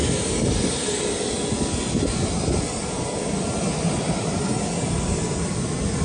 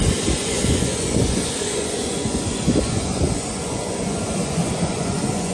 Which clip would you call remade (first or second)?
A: second